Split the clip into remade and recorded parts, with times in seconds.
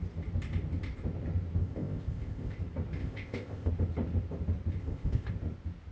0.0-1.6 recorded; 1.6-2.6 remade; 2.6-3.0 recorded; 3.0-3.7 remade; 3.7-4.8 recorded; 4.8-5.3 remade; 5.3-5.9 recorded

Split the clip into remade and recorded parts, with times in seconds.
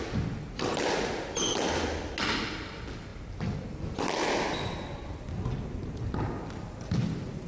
0.0-7.5 recorded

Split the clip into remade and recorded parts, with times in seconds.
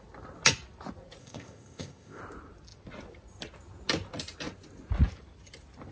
0.0-1.2 recorded; 1.2-2.2 remade; 2.2-5.9 recorded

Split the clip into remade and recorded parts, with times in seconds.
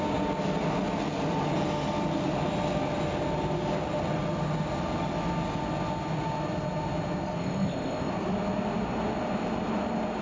0.0-7.4 recorded; 7.4-8.1 remade; 8.1-10.2 recorded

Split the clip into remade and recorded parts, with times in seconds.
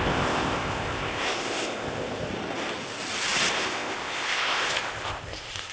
0.0-2.3 remade; 2.3-3.5 recorded; 3.5-5.7 remade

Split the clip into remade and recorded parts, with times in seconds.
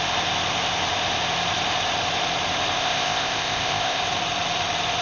0.0-2.8 recorded; 2.8-4.0 remade; 4.0-5.0 recorded